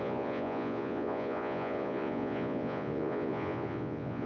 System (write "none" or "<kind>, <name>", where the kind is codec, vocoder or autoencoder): vocoder, Vocos